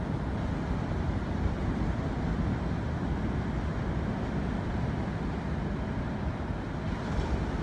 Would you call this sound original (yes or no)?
yes